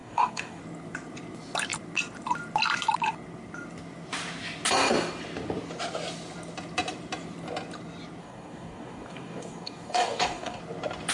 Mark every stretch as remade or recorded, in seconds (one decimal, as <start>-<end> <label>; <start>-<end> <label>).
0.0-0.6 remade; 0.6-8.2 recorded; 8.2-10.6 remade; 10.6-11.1 recorded